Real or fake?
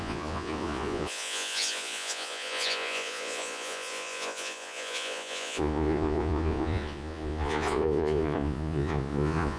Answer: fake